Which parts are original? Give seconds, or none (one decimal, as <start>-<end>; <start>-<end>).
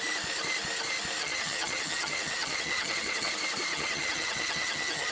0.0-1.2; 3.3-3.7